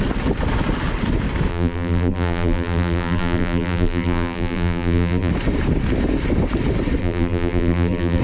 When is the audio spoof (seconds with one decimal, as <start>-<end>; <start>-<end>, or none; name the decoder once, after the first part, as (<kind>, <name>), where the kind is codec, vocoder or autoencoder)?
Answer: 1.5-5.3 (vocoder, BigVGAN v2); 7.0-8.2

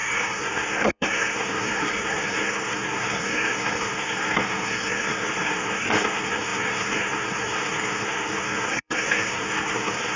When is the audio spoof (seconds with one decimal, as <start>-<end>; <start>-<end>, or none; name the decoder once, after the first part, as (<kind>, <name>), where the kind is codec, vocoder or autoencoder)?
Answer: 0.0-10.2 (codec, SNAC)

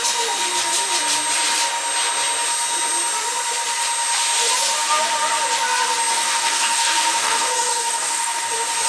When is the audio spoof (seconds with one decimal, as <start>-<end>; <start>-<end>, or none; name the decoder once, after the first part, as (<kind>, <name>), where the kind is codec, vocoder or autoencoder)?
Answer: 6.1-8.4 (codec, DAC)

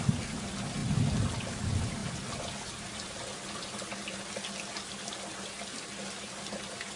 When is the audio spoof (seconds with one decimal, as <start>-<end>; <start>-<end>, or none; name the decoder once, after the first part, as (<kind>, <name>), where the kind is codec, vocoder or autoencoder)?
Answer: none

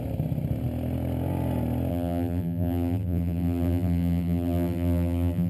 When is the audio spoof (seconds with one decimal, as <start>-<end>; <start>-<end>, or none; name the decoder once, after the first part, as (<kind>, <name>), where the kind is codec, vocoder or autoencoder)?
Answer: 1.9-5.5 (vocoder, BigVGAN v2)

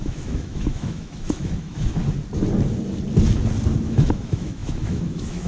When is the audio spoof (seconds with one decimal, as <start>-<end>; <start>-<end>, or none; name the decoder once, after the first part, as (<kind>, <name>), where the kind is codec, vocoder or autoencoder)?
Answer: 0.0-2.0 (autoencoder, DAC-VAE); 3.8-5.5